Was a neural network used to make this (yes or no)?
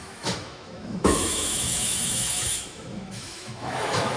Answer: yes